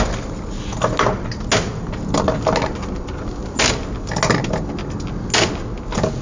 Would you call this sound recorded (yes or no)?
yes